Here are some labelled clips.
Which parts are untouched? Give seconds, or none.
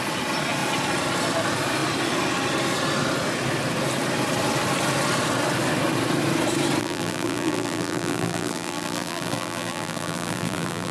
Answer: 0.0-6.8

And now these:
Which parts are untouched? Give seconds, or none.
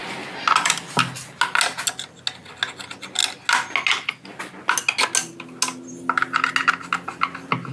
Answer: 0.0-7.7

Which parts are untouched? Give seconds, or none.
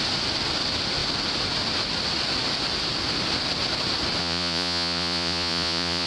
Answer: 0.0-4.2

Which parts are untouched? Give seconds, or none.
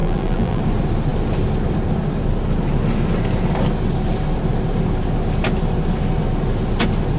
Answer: 0.6-7.2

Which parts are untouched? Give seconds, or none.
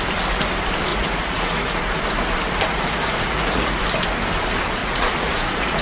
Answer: 0.0-0.9; 1.8-2.7; 3.8-4.8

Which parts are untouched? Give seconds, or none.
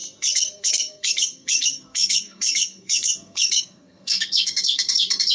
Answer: none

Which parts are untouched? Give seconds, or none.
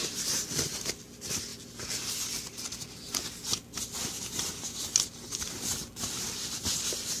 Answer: 3.5-4.2